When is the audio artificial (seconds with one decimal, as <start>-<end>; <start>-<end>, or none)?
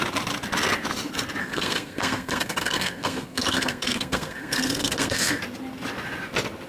1.4-5.4